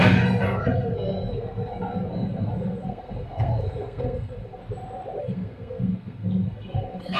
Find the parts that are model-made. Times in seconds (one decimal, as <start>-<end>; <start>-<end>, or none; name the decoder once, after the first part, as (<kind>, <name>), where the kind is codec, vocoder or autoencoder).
0.0-4.6 (codec, SNAC); 5.2-7.2